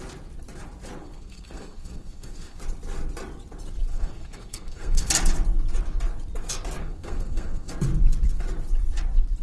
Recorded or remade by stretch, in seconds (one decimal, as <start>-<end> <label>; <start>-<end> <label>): 0.0-1.0 recorded; 1.0-2.6 remade; 2.6-3.9 recorded; 3.9-5.1 remade; 5.1-6.8 recorded; 6.8-7.7 remade; 7.7-9.4 recorded